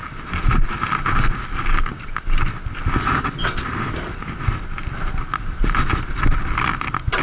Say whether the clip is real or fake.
real